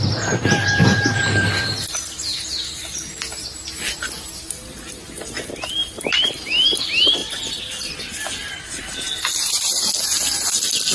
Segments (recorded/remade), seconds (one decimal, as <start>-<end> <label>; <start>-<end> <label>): 0.0-0.8 recorded; 0.8-1.9 remade; 1.9-2.3 recorded; 2.3-2.8 remade; 2.8-5.8 recorded; 5.8-6.3 remade; 6.3-10.9 recorded

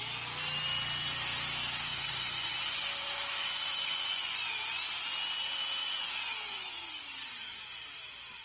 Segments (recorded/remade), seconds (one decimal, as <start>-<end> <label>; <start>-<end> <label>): 0.0-1.9 recorded; 1.9-4.8 remade; 4.8-5.8 recorded; 5.8-7.0 remade; 7.0-8.4 recorded

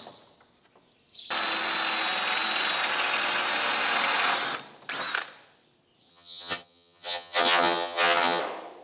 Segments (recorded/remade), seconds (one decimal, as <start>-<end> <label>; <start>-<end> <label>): 0.0-6.1 recorded; 6.1-8.4 remade; 8.4-8.8 recorded

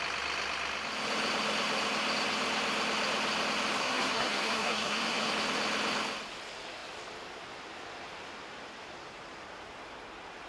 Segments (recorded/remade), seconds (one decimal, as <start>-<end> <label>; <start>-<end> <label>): 0.0-3.8 recorded; 3.8-5.3 remade; 5.3-10.5 recorded

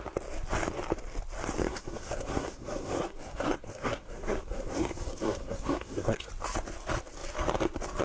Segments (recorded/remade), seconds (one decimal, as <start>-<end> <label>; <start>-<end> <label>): 0.0-1.6 recorded; 1.6-6.3 remade; 6.3-8.0 recorded

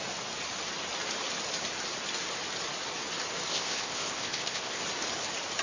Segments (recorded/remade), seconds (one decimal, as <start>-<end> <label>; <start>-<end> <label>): 0.0-3.5 recorded; 3.5-4.8 remade; 4.8-5.6 recorded

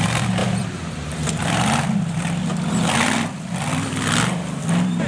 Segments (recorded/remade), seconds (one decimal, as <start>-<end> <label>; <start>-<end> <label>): 0.0-5.1 remade